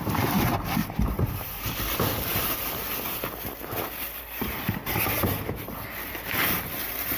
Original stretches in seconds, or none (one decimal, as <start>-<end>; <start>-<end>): 0.8-1.7